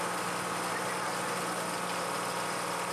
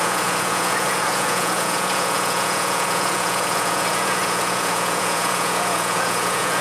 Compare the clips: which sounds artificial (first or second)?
second